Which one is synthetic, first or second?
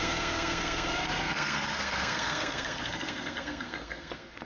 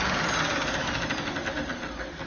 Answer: first